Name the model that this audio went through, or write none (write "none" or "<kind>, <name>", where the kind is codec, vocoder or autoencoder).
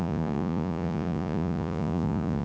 vocoder, Vocos